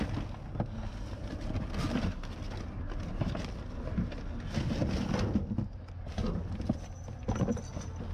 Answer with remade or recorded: recorded